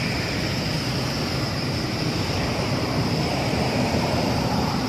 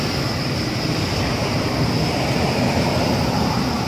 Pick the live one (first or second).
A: second